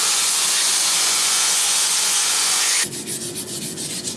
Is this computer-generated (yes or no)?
yes